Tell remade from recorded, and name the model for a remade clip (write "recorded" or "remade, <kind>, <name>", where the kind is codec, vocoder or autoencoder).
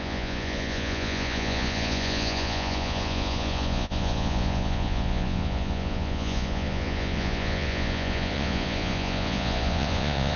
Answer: remade, vocoder, Vocos